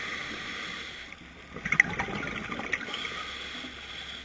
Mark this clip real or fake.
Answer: real